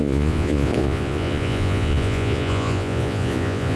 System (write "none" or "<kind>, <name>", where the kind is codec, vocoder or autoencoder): vocoder, Vocos